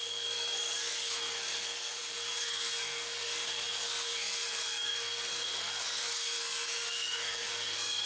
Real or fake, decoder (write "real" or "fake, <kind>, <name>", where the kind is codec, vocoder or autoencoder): fake, codec, SNAC